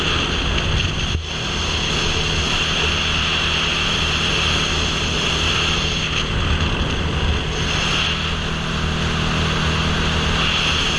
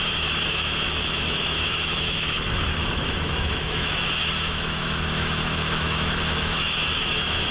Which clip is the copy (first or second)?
second